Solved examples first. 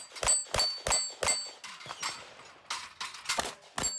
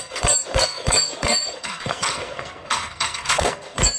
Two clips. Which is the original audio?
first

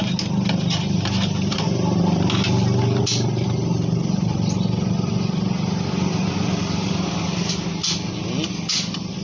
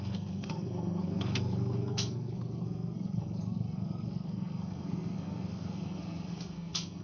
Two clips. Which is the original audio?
first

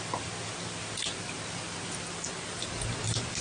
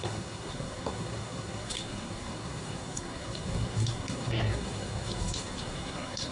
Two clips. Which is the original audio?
first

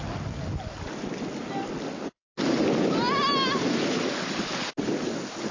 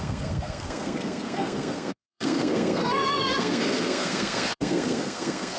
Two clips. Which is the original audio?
first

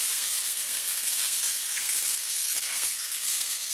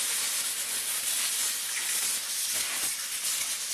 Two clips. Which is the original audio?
second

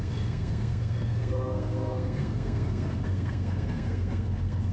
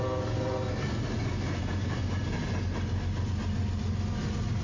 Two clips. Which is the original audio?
second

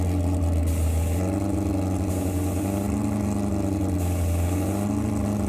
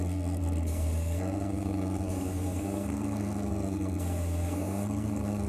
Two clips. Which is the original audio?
first